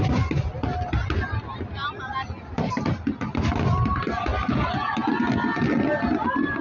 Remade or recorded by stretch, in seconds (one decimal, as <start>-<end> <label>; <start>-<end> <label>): 0.0-6.6 recorded